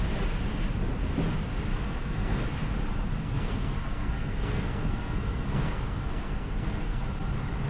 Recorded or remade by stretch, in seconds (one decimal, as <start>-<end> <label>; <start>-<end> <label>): 0.0-1.7 recorded; 1.7-2.4 remade; 2.4-3.2 recorded; 3.2-7.0 remade; 7.0-7.7 recorded